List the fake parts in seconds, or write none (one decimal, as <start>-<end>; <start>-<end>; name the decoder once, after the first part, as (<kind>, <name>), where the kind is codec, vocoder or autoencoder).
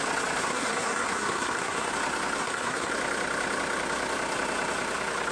0.4-1.9 (codec, SNAC); 2.4-2.9